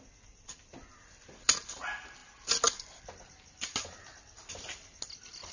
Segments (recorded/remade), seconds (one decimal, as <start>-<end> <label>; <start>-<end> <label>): 0.0-5.5 recorded